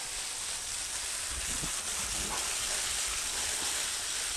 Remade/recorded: recorded